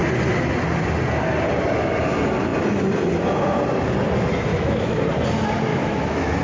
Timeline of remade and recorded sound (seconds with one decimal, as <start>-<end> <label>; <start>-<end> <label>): 0.0-4.5 recorded; 4.5-5.0 remade; 5.0-5.7 recorded; 5.7-6.4 remade